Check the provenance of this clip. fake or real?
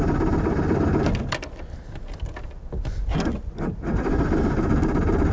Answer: real